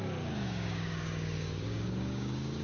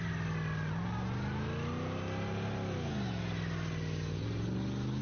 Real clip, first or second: second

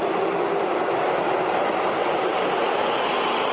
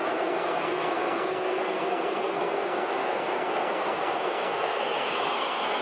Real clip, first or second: first